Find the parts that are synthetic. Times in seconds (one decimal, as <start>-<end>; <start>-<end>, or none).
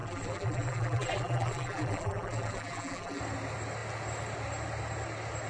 0.0-3.2